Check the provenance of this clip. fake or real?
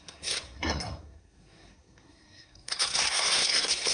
fake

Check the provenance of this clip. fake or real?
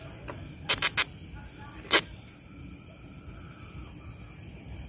real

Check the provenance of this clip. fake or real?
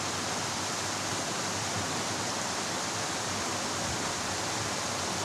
real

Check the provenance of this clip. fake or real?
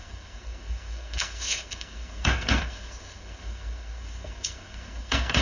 fake